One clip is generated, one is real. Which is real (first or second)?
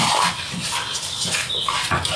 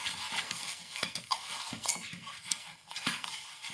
first